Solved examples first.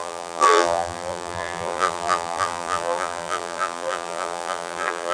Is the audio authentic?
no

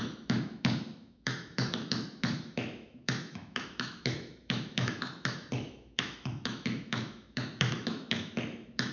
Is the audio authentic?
no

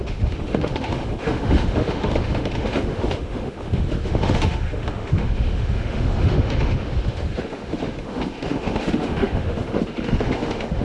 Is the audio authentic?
no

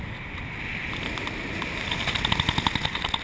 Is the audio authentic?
yes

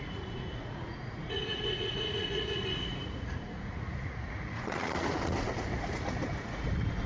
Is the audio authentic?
no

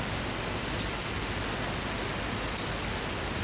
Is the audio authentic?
yes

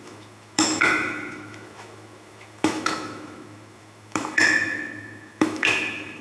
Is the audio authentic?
no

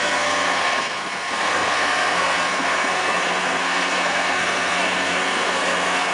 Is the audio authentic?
no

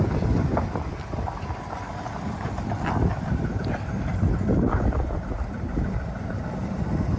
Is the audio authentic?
no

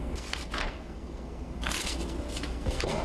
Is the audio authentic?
no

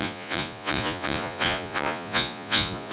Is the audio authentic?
no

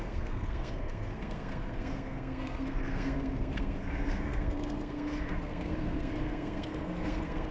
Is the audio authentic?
no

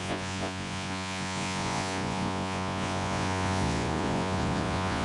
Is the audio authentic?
no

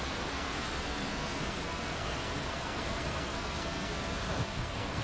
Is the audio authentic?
no